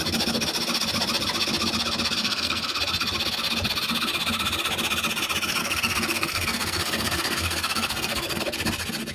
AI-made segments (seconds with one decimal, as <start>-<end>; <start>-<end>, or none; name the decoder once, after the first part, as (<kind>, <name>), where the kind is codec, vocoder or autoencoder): 2.2-2.8 (codec, SNAC); 5.6-8.4